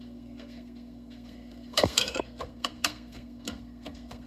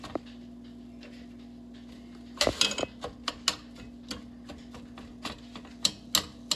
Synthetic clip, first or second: first